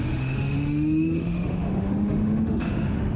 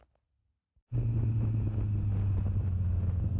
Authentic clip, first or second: second